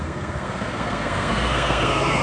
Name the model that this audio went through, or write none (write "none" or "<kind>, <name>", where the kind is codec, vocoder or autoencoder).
codec, SNAC